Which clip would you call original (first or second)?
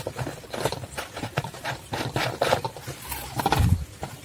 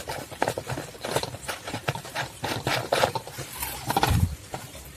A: first